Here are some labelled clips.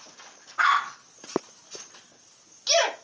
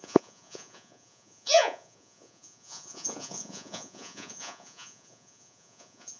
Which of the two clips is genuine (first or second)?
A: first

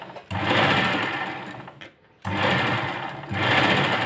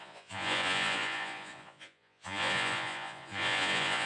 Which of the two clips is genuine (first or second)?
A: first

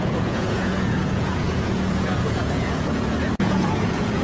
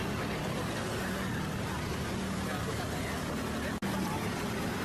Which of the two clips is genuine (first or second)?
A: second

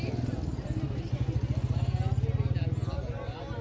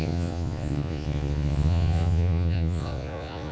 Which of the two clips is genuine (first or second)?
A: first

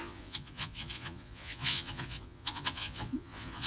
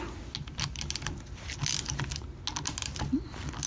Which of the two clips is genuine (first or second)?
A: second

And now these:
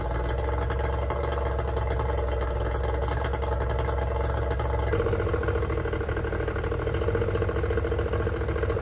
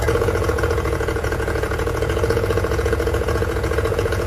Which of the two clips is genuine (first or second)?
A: first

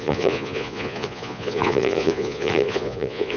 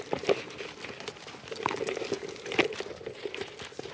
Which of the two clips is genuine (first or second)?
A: second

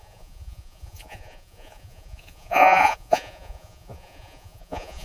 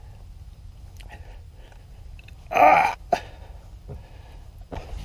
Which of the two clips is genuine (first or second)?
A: second